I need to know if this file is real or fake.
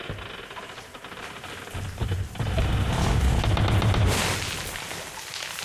real